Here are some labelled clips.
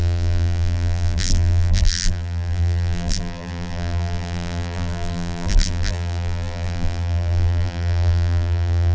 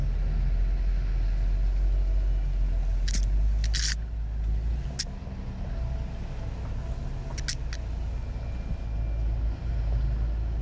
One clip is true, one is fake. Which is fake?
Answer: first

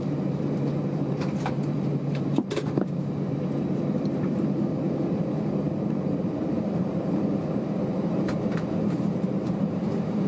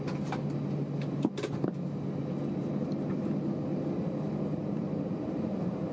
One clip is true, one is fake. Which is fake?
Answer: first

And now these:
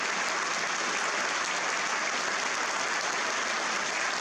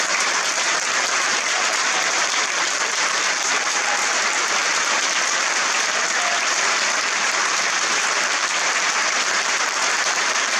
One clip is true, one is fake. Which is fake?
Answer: second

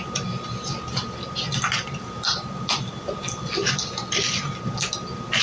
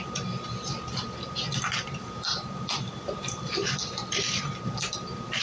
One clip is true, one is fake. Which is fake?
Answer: second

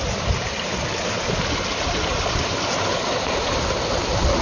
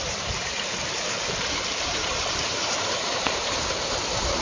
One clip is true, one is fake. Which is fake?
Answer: second